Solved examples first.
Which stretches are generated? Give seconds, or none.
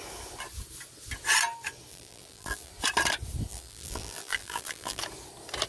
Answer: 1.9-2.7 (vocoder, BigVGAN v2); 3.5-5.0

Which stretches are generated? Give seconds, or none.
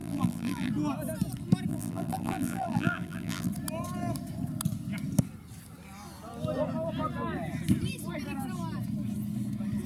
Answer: 0.0-0.7 (vocoder, BigVGAN v2); 1.7-3.5